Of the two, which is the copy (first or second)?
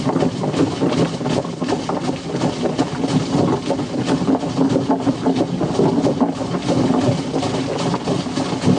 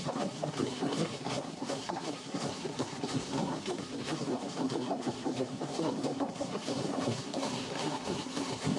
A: second